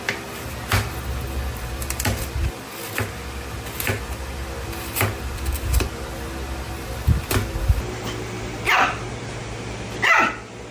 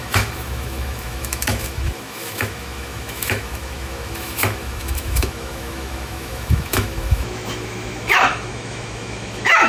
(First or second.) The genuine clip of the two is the first